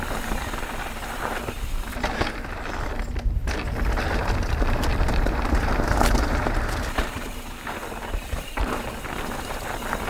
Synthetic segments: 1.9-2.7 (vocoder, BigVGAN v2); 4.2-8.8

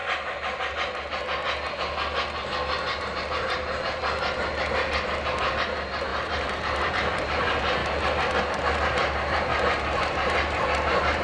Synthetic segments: 3.0-4.0 (vocoder, BigVGAN v2); 5.4-7.8; 8.4-11.2

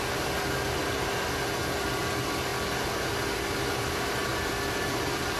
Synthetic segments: 4.3-5.4 (vocoder, BigVGAN v2)

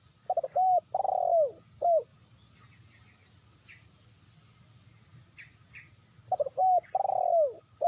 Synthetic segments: none

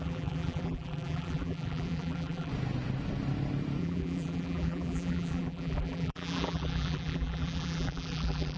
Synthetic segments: 0.0-2.5 (vocoder, BigVGAN v2); 3.8-8.6

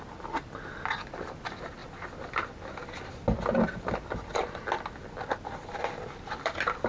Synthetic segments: 0.0-6.9 (vocoder, BigVGAN v2)

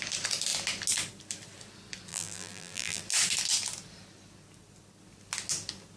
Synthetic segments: 2.1-3.0 (vocoder, BigVGAN v2)

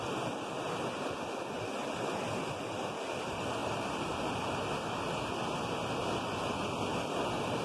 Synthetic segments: none